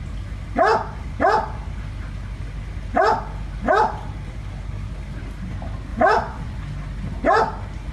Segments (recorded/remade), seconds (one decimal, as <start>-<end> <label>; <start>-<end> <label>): 0.0-5.9 recorded; 5.9-6.6 remade; 6.6-7.9 recorded